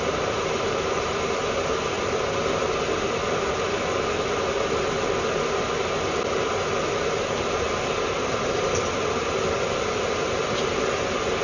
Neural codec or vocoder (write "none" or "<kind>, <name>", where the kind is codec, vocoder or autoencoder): none